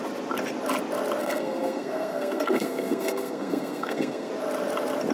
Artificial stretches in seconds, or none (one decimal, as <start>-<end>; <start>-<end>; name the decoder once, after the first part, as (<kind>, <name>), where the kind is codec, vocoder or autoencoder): 1.2-4.3 (codec, SNAC)